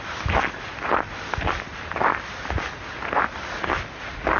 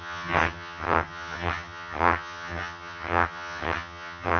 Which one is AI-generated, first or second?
second